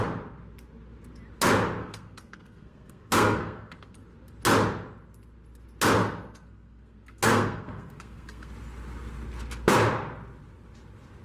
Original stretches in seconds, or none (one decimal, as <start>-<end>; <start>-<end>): 0.0-1.8; 4.0-6.0; 8.5-11.2